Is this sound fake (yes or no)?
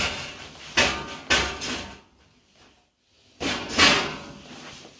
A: no